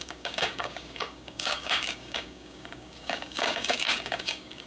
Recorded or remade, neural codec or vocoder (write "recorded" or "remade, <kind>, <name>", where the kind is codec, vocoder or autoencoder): remade, codec, DAC